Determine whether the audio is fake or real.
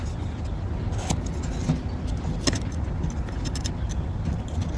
real